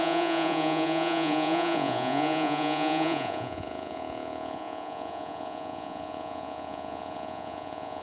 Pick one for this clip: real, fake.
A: fake